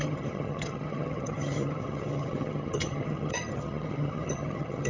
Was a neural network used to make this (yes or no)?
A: yes